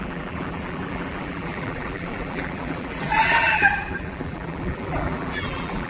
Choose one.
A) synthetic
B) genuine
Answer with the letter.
A